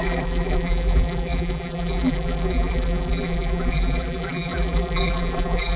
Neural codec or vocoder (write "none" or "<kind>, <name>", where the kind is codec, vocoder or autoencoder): vocoder, BigVGAN v2